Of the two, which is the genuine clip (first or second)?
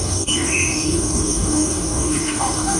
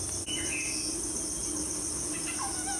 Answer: second